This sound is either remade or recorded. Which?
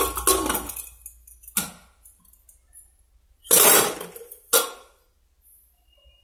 recorded